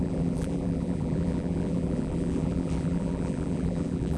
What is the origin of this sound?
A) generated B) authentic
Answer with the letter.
A